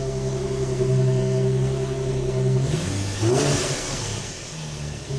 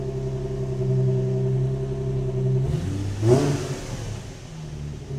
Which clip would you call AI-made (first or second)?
first